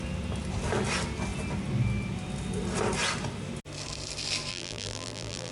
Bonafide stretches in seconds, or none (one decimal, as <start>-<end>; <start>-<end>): 0.0-4.5